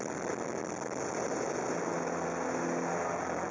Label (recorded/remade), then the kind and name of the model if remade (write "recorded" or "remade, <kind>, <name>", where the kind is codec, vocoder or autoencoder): recorded